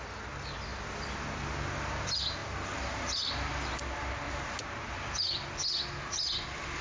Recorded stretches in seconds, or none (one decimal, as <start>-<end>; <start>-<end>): 0.0-6.8